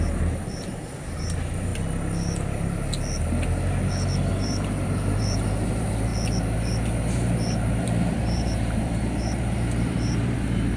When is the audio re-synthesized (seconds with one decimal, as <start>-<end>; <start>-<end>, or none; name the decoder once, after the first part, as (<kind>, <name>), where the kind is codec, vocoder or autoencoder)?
0.0-1.7 (vocoder, BigVGAN v2); 4.3-6.1; 7.8-10.8